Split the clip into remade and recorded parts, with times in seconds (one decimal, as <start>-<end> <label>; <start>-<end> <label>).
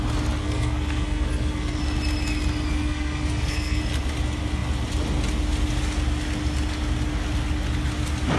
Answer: 0.0-0.4 recorded; 0.4-1.8 remade; 1.8-2.8 recorded; 2.8-3.8 remade; 3.8-8.4 recorded